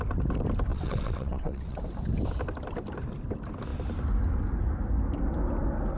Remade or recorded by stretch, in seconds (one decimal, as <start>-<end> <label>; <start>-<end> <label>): 0.0-0.7 recorded; 0.7-1.8 remade; 1.8-6.0 recorded